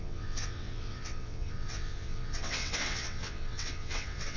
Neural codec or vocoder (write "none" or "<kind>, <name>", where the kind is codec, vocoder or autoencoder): vocoder, WaveNeXt